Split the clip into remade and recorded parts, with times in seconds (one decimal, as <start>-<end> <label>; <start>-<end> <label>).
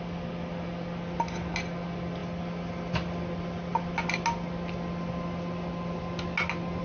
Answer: 0.0-6.8 recorded